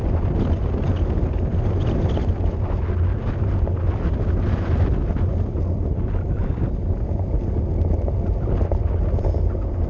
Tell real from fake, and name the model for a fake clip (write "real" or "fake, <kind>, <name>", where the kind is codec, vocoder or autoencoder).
real